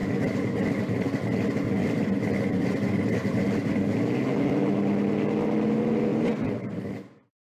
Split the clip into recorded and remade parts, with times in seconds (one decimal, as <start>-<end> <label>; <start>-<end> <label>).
0.0-7.4 recorded